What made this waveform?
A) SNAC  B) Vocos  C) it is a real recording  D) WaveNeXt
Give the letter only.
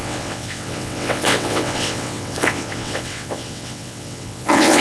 D